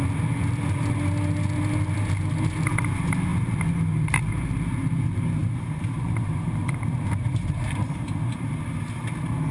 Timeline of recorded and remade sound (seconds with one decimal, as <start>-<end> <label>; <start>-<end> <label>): 0.0-5.4 recorded; 5.4-8.5 remade; 8.5-9.5 recorded